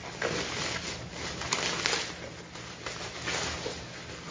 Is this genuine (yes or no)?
yes